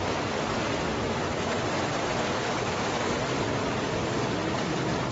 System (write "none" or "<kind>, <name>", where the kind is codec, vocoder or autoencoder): none